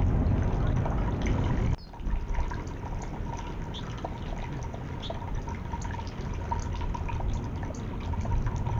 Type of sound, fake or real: real